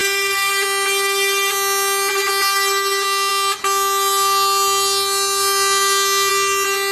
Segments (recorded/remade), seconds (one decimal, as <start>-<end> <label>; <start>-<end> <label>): 0.0-0.5 remade; 0.5-6.9 recorded